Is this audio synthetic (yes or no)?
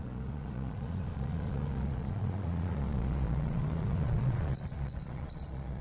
yes